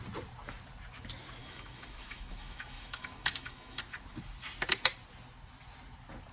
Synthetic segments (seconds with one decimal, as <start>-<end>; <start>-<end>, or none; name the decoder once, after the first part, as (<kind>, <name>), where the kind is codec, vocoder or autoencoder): 1.4-3.8 (autoencoder, DAC-VAE)